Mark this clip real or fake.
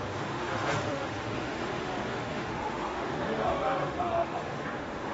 fake